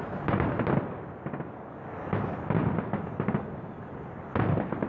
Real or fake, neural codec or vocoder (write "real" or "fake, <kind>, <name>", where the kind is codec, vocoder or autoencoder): real